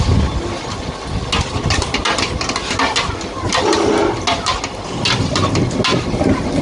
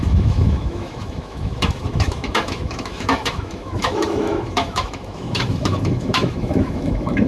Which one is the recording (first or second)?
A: first